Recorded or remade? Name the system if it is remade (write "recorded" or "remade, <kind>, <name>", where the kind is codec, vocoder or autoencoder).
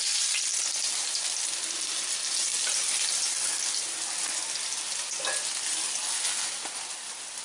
recorded